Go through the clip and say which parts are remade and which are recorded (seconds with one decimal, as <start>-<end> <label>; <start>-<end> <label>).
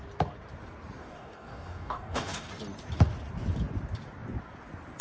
0.0-1.0 recorded; 1.0-2.5 remade; 2.5-5.0 recorded